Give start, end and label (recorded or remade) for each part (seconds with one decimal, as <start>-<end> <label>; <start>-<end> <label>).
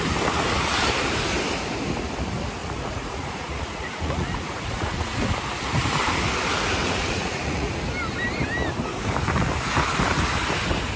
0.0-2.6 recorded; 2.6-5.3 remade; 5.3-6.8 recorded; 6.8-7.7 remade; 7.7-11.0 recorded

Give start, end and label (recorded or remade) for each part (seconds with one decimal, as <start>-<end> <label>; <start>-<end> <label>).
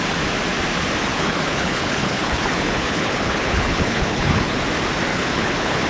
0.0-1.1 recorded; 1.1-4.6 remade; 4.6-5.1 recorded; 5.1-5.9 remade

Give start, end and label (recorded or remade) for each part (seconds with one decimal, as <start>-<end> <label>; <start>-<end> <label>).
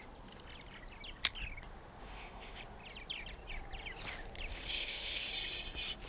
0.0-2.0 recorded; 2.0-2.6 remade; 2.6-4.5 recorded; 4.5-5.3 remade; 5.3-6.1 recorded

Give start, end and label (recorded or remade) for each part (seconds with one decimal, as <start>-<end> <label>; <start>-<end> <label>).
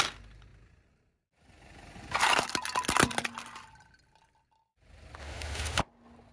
0.0-5.2 recorded; 5.2-5.8 remade; 5.8-6.3 recorded